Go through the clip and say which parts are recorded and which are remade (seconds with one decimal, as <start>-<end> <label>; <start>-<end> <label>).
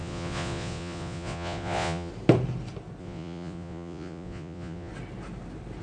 0.0-2.1 remade; 2.1-3.0 recorded; 3.0-4.9 remade; 4.9-5.8 recorded